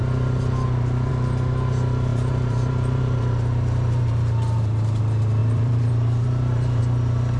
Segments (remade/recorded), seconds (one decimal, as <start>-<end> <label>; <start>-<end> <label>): 0.0-2.1 recorded; 2.1-5.0 remade; 5.0-5.4 recorded; 5.4-6.8 remade; 6.8-7.4 recorded